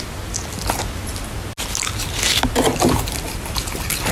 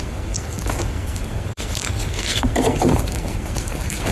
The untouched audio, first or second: first